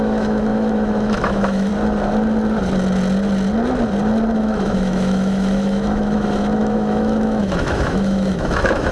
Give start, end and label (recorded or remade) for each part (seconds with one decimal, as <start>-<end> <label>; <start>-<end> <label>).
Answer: 0.0-1.7 remade; 1.7-4.4 recorded; 4.4-8.9 remade